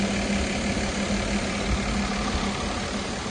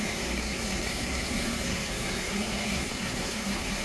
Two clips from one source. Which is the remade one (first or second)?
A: second